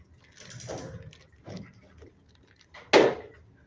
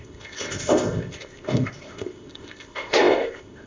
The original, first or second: first